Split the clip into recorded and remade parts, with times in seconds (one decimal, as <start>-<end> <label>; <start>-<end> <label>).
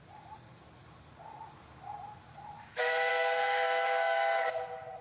0.0-3.1 recorded; 3.1-4.5 remade; 4.5-5.0 recorded